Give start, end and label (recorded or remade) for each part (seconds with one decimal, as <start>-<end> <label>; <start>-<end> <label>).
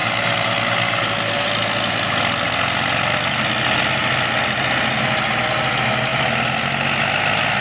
0.0-7.6 recorded